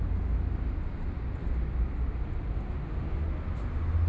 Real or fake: real